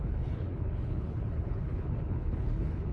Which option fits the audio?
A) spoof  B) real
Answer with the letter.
A